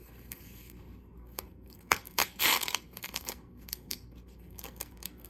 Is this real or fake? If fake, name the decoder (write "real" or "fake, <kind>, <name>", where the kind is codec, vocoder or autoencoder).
fake, codec, SNAC